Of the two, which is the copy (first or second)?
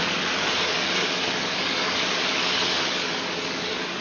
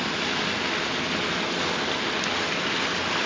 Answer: first